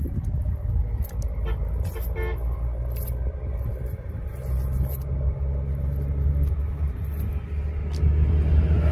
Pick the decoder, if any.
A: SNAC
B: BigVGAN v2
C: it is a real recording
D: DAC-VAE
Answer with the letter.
C